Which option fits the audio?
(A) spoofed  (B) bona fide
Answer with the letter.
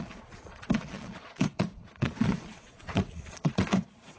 A